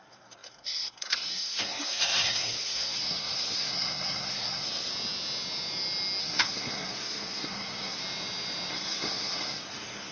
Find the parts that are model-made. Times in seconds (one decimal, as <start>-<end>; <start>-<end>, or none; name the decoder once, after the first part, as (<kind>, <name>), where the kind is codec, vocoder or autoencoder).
0.0-4.9 (codec, SNAC); 6.2-8.0; 8.7-10.1